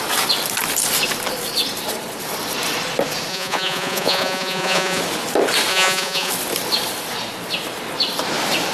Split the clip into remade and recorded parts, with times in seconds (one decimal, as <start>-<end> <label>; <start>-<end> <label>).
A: 0.0-3.3 recorded; 3.3-5.0 remade; 5.0-5.7 recorded; 5.7-6.3 remade; 6.3-8.7 recorded